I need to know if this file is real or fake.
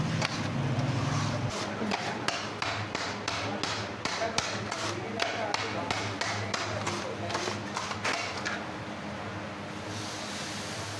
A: real